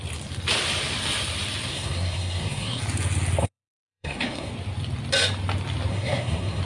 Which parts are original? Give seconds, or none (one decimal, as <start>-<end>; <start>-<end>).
0.0-1.7; 2.8-3.4; 4.5-5.9